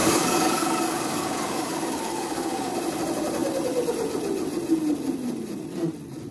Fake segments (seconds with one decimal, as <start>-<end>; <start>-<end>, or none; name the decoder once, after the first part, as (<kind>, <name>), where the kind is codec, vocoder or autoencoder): 0.0-2.7 (codec, DAC)